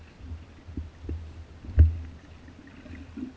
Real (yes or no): yes